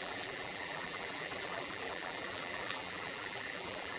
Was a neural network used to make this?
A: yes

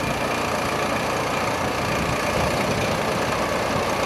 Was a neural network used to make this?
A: no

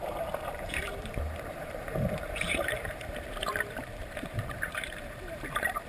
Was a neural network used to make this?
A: yes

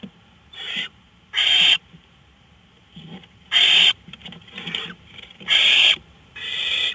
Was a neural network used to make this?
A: yes